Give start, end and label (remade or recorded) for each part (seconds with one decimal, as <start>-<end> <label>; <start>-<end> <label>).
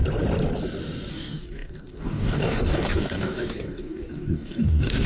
0.0-1.1 recorded; 1.1-5.1 remade